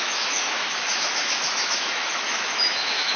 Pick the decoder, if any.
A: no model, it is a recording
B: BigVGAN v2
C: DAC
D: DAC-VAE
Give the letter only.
D